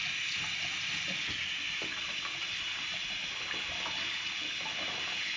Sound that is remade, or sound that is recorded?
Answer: recorded